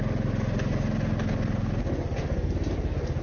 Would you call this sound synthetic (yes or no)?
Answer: no